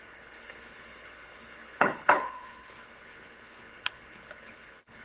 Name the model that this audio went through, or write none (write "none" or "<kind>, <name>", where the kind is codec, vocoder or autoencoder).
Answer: codec, HILCodec